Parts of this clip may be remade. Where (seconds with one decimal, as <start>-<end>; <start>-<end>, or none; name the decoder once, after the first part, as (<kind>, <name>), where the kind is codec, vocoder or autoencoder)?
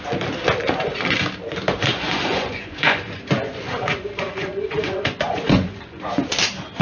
1.9-6.0 (vocoder, Vocos)